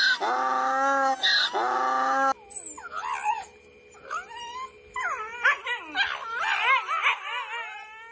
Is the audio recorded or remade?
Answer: recorded